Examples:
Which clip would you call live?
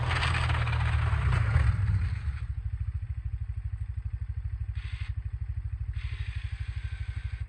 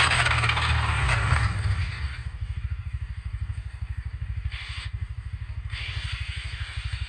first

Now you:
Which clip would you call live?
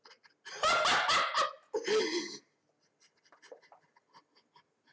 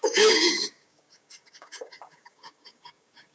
first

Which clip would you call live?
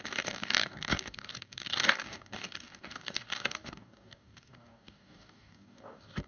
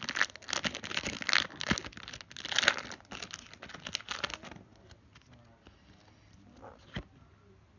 second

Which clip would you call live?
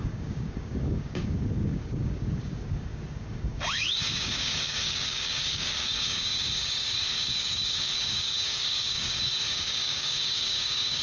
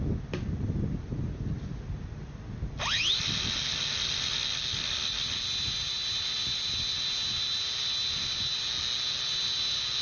second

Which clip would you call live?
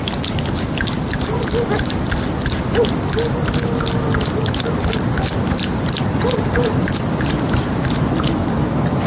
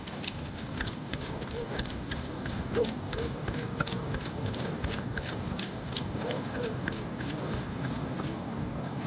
first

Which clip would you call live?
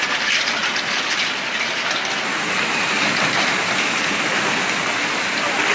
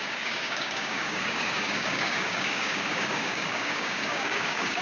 first